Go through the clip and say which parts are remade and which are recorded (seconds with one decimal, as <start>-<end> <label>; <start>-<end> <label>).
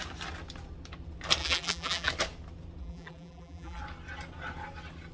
0.0-1.4 recorded; 1.4-2.1 remade; 2.1-2.8 recorded; 2.8-3.8 remade; 3.8-5.1 recorded